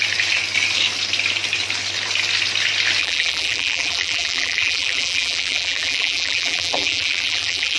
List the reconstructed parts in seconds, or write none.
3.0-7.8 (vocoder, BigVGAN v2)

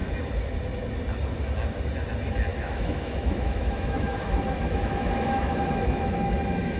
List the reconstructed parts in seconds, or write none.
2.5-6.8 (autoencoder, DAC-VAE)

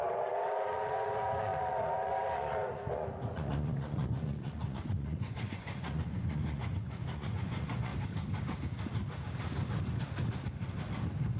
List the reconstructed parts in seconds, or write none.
0.0-7.9 (vocoder, Vocos)

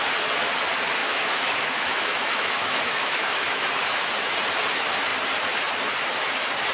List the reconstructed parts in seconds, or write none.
1.0-4.1 (autoencoder, DAC-VAE)

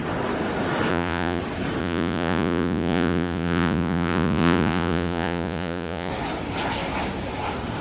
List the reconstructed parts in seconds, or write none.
0.9-1.4 (vocoder, Vocos); 1.8-6.1

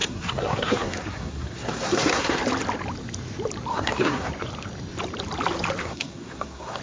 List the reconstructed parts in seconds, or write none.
0.0-2.4 (codec, SNAC); 3.7-4.3; 5.8-6.8

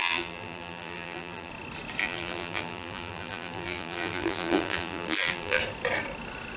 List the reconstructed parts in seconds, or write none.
0.0-1.5 (vocoder, BigVGAN v2); 2.0-5.6

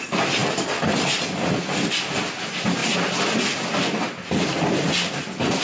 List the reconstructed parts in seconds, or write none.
none